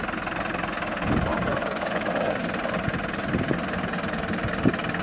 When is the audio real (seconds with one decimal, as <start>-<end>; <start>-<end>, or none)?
0.0-1.3; 2.4-5.0